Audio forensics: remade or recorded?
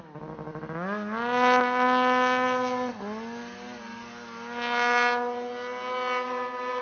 recorded